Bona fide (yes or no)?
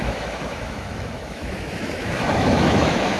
no